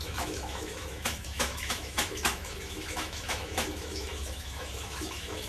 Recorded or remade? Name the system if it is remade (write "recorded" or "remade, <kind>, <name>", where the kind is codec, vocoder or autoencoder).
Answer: remade, autoencoder, DAC-VAE